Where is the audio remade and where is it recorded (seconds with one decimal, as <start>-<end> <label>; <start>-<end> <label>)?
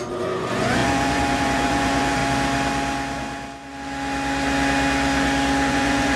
0.0-2.2 remade; 2.2-5.7 recorded; 5.7-6.2 remade